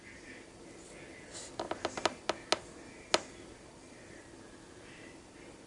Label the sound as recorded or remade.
recorded